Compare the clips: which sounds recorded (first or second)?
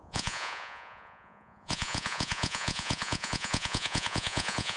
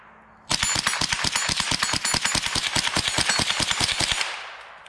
second